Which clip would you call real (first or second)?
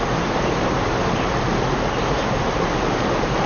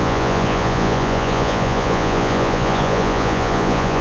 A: first